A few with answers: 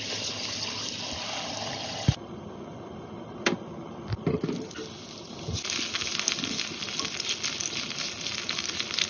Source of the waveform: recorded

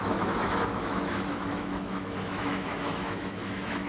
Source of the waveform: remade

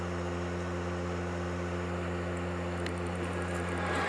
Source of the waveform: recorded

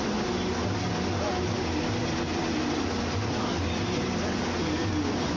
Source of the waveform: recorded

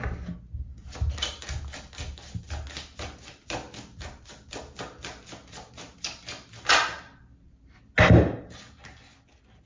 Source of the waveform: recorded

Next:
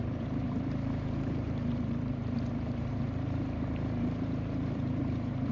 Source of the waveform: remade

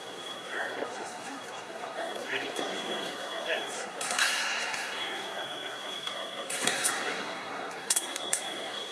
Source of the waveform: remade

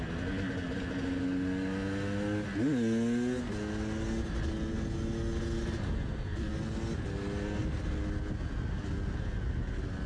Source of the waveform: recorded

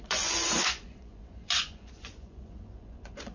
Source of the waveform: remade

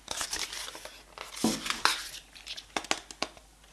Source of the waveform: recorded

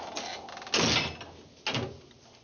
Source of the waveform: recorded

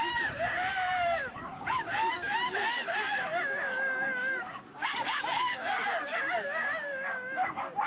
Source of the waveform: remade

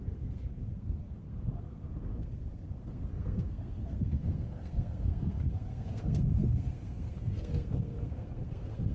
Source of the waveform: remade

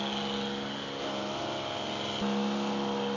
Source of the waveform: recorded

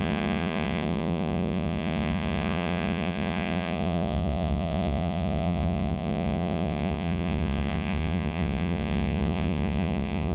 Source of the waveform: remade